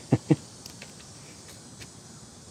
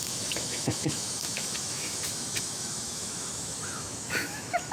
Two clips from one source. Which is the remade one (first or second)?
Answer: second